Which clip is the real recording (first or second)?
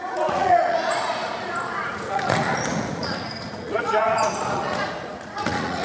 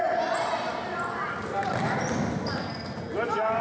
second